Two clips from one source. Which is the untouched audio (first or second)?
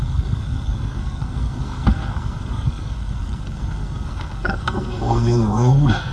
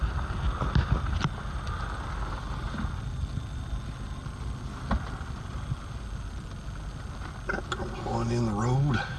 second